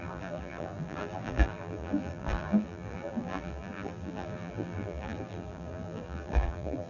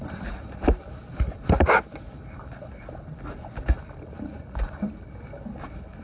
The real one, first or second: second